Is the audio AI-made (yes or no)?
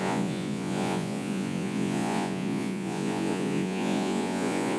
yes